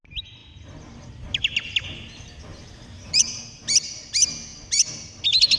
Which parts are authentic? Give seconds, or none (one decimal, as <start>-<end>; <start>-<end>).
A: 0.0-2.5; 3.4-5.6